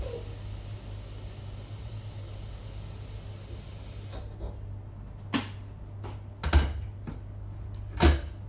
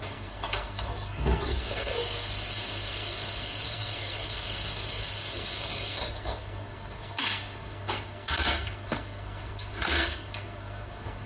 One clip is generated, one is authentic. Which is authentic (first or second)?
first